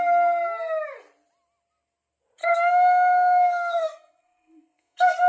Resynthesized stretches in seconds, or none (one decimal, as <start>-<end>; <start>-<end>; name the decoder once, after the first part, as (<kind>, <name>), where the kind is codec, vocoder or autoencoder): 2.4-5.3 (codec, SNAC)